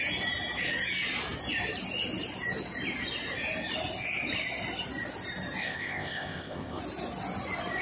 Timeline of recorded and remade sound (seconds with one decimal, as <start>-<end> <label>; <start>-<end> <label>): 0.0-5.6 recorded; 5.6-6.8 remade; 6.8-7.8 recorded